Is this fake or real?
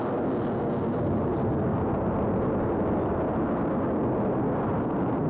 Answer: real